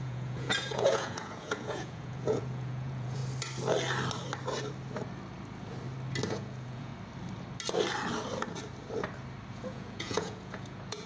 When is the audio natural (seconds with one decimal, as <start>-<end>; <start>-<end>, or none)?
3.2-6.3; 6.9-9.5